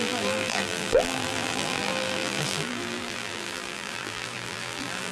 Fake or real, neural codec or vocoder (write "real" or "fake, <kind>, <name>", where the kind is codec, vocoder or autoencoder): fake, vocoder, BigVGAN v2